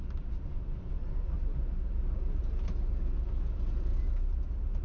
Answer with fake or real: real